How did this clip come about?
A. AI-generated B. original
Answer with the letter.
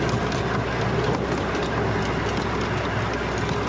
B